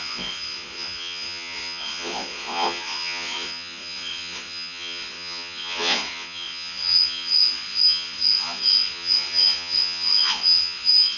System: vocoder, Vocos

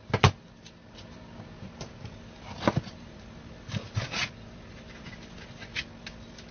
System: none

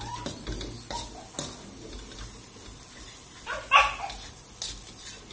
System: none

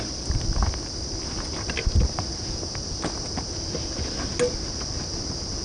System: none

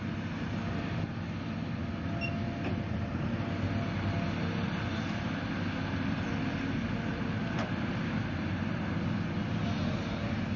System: none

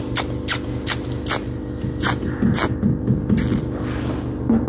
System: none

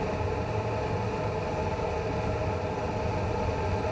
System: none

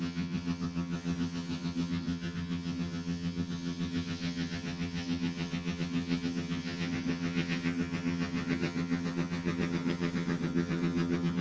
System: vocoder, HiFi-GAN